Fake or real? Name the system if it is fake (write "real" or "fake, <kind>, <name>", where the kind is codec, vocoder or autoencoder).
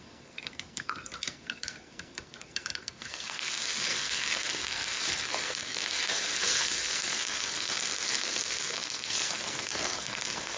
fake, codec, SNAC